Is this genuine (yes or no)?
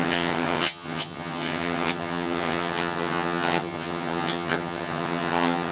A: no